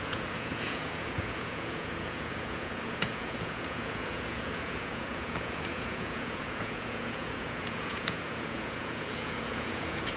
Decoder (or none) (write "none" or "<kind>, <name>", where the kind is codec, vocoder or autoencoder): vocoder, Vocos